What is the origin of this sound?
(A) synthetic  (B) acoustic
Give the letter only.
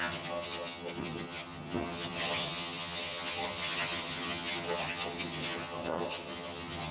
A